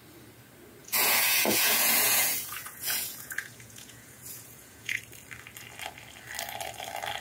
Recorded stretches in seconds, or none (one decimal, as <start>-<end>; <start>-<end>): 0.0-0.8; 5.0-7.2